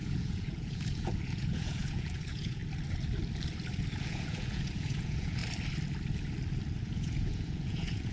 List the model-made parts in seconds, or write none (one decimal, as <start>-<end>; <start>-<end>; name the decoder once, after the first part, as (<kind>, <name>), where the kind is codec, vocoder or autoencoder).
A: 0.0-2.6 (vocoder, Vocos); 4.0-5.4; 6.8-8.1